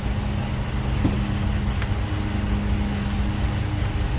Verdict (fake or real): real